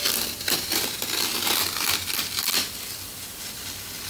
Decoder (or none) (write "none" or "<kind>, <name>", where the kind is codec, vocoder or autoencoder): none